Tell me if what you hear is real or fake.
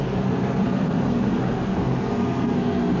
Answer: fake